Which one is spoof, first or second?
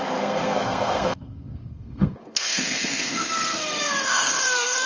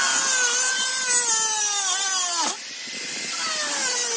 first